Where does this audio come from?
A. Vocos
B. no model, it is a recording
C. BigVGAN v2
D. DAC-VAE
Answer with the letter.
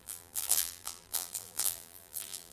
C